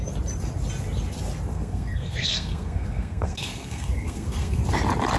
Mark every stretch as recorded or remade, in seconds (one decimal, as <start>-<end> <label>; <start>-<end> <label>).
0.0-1.5 recorded; 1.5-4.6 remade; 4.6-5.2 recorded